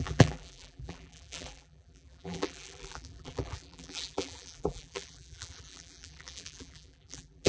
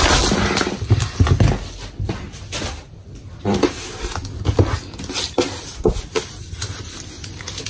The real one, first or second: second